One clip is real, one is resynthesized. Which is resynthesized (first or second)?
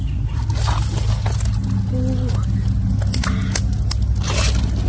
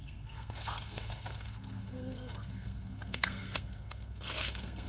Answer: second